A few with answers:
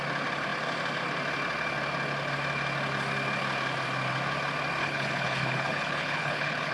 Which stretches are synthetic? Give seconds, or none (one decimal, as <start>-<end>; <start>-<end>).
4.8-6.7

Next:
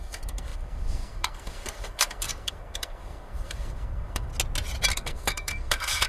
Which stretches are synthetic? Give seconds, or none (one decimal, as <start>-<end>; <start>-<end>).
0.0-4.3; 4.9-6.1

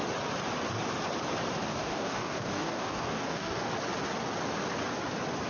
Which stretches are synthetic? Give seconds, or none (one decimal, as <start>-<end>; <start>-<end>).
1.7-3.7